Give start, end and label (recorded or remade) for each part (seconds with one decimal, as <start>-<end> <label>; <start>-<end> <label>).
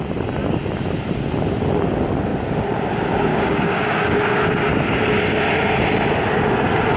0.0-3.3 recorded; 3.3-4.2 remade; 4.2-7.0 recorded